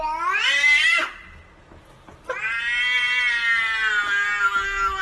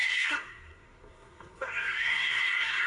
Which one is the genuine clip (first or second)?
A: first